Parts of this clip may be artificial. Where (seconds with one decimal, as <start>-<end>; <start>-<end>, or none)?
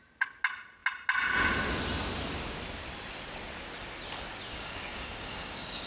4.5-5.9